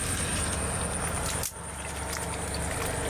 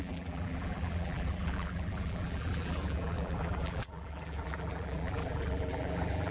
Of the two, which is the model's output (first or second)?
second